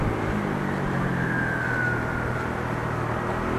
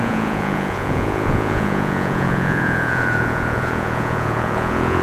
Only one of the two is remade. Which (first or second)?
second